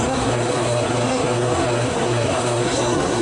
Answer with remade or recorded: remade